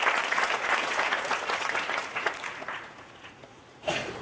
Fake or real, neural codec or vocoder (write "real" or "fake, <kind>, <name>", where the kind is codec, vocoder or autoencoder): fake, vocoder, Vocos